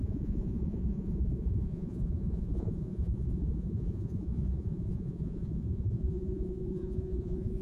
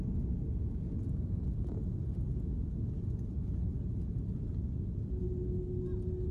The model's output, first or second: first